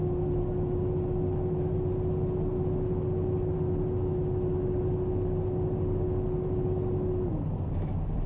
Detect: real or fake real